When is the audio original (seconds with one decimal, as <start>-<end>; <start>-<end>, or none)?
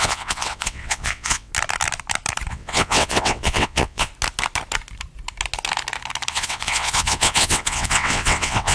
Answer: 1.5-2.5; 4.1-6.3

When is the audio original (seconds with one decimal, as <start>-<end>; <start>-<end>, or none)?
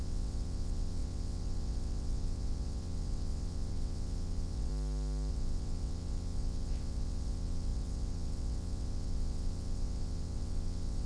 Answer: 4.7-5.3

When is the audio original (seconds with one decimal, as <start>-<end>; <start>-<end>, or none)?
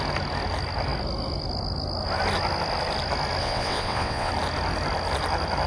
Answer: 0.0-3.4; 4.3-5.7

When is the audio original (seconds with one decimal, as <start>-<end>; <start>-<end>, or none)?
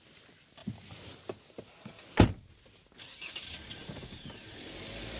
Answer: 0.0-5.2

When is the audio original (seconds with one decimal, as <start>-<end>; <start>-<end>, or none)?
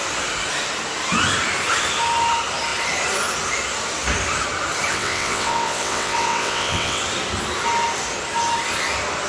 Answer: 0.0-4.9; 7.0-9.3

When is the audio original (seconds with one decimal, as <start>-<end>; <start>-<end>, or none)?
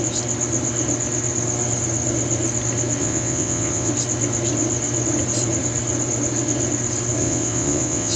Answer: 0.0-3.0; 3.9-7.2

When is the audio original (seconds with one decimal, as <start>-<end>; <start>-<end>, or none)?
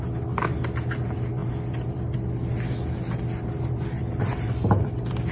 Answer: 0.0-5.3